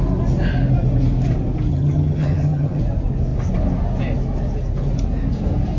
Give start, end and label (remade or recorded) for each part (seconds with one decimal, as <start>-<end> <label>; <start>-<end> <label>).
0.0-1.7 recorded; 1.7-2.8 remade; 2.8-5.8 recorded